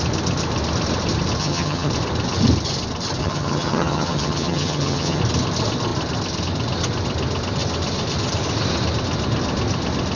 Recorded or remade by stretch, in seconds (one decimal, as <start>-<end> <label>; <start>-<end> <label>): 0.0-1.4 recorded; 1.4-1.9 remade; 1.9-3.2 recorded; 3.2-5.2 remade; 5.2-10.2 recorded